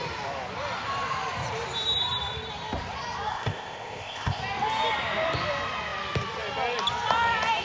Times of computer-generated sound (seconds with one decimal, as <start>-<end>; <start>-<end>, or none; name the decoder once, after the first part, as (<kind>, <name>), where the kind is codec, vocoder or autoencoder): 3.3-4.4 (codec, ZipCodec)